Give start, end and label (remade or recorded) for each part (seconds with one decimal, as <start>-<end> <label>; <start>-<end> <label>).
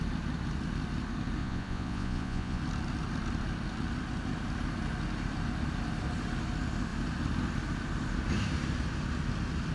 0.0-1.4 recorded; 1.4-2.6 remade; 2.6-9.7 recorded